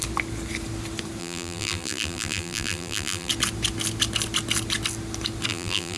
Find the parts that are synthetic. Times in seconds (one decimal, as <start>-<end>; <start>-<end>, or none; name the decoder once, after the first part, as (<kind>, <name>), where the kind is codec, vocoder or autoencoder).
1.2-3.3 (vocoder, BigVGAN v2); 5.5-6.0